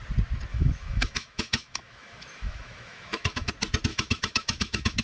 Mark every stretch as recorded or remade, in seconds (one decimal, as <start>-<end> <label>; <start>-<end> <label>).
0.0-0.5 recorded; 0.5-3.5 remade; 3.5-3.9 recorded; 3.9-5.0 remade